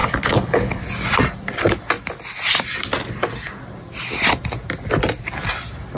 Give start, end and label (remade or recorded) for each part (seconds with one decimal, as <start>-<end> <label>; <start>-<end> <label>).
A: 0.0-0.8 remade; 0.8-6.0 recorded